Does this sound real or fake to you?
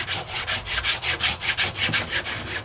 real